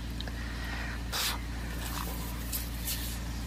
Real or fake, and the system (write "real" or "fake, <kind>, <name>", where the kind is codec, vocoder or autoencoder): real